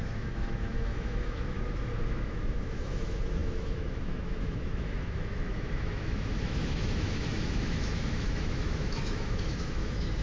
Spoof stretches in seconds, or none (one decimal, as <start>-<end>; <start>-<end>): 0.0-10.2